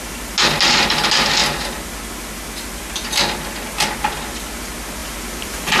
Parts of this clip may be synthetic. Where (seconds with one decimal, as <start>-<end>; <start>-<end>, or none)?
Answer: 5.0-5.8